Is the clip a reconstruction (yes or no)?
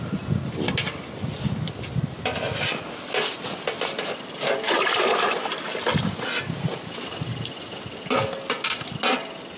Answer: no